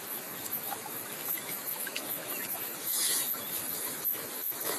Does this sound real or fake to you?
fake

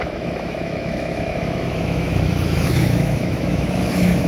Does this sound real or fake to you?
fake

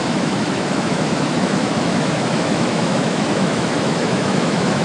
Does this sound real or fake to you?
fake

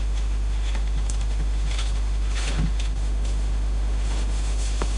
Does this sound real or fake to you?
fake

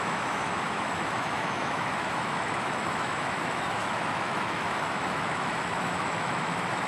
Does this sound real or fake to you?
fake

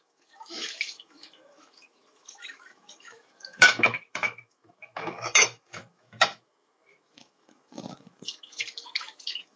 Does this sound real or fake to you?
fake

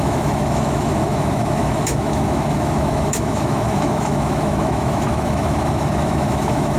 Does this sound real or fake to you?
fake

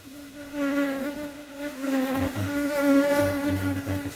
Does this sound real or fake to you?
fake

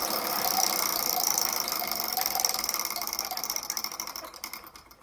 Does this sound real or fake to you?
real